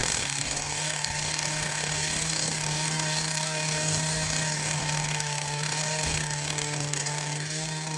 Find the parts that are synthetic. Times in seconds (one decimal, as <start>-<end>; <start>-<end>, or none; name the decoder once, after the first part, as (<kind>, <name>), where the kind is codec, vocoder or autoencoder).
0.0-8.0 (codec, DAC)